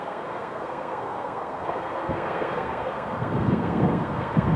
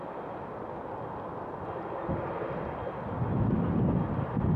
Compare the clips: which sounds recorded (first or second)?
second